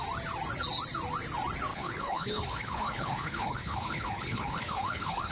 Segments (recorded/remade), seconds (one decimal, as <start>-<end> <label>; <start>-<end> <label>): 0.0-1.7 recorded; 1.7-5.3 remade